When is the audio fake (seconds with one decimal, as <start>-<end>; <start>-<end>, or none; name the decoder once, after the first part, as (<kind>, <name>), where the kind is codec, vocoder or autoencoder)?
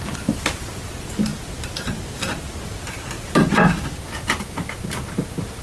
none